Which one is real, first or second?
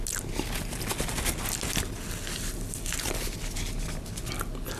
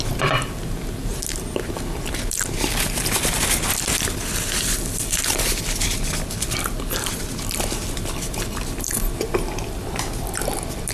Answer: first